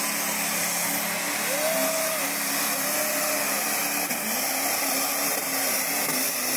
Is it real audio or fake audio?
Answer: real